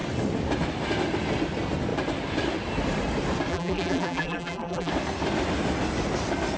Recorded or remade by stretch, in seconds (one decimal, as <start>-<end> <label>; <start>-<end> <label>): 0.0-3.5 recorded; 3.5-4.9 remade; 4.9-6.6 recorded